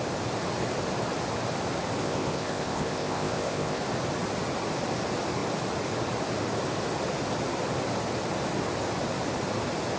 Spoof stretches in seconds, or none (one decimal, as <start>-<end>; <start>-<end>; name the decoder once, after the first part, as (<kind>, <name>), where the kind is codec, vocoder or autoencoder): 2.0-3.8 (codec, ZipCodec)